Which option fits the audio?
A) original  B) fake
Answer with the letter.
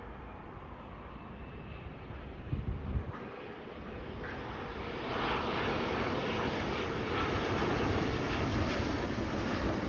B